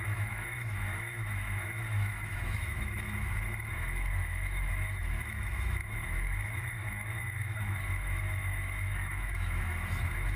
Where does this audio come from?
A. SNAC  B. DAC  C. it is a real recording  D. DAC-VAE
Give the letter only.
D